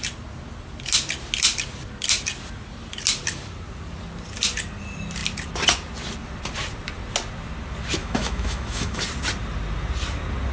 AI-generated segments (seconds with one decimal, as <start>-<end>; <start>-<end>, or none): 8.0-9.0